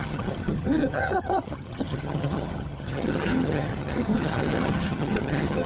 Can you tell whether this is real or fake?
fake